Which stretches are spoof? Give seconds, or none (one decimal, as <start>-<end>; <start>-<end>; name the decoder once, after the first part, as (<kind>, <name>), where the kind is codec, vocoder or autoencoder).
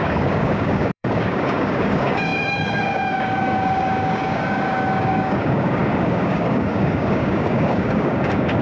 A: 0.0-8.6 (codec, DAC)